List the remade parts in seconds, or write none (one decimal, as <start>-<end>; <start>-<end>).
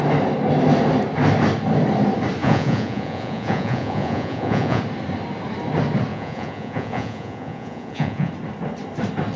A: 2.4-4.8; 6.1-8.3